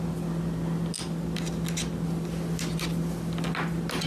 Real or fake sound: real